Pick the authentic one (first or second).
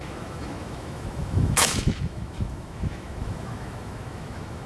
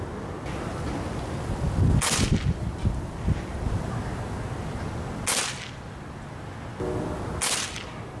second